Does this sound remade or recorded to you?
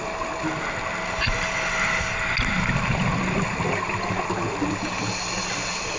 recorded